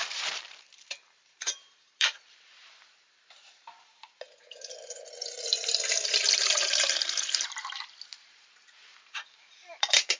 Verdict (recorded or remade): remade